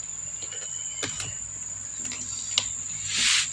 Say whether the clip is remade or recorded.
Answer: recorded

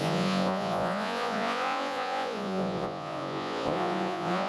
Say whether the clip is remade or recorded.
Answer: remade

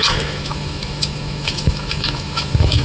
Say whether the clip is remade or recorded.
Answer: remade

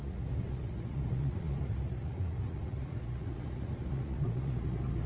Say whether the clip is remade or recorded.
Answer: remade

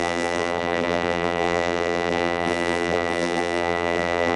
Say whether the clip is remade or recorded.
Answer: remade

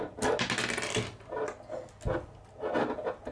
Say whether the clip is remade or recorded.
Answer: recorded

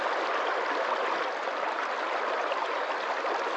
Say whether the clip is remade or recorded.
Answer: recorded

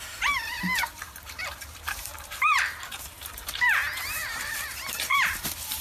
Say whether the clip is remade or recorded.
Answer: remade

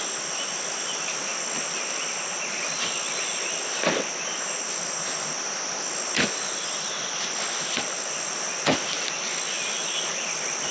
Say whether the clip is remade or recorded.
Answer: recorded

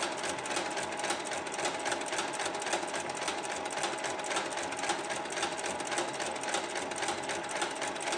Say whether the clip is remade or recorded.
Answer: recorded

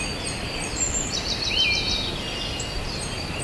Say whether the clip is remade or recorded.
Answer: recorded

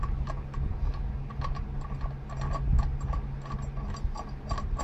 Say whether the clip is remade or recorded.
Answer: recorded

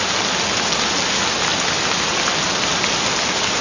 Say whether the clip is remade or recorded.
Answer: recorded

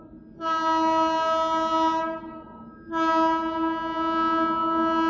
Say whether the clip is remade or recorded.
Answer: recorded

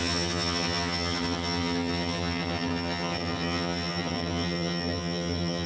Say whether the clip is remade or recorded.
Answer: remade